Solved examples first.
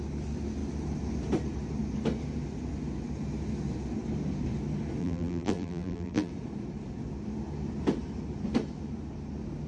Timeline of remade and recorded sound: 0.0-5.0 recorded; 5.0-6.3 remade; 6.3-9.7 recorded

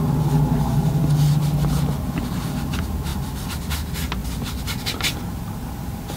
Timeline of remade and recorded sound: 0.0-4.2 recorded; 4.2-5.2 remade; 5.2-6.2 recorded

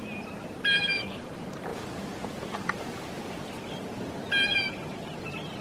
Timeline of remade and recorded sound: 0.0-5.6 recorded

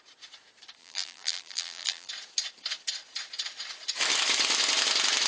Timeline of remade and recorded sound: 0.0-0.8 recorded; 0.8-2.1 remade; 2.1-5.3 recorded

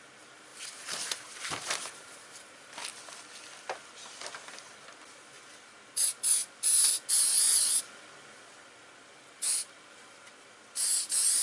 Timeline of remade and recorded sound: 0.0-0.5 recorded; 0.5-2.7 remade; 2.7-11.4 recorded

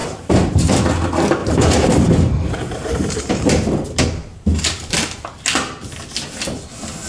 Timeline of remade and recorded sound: 0.0-0.8 remade; 0.8-1.4 recorded; 1.4-5.4 remade; 5.4-7.1 recorded

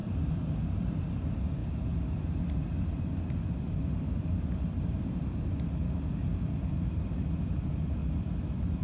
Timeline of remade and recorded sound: 0.0-1.6 remade; 1.6-6.7 recorded; 6.7-8.0 remade; 8.0-8.8 recorded